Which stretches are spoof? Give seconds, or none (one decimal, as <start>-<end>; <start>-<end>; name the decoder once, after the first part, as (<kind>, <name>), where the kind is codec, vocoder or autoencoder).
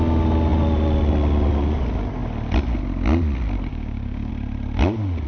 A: 3.7-4.3 (codec, DAC)